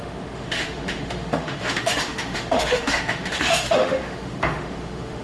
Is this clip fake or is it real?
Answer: fake